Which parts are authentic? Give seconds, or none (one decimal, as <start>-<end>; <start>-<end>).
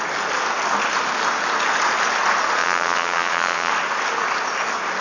0.0-2.6; 3.7-5.0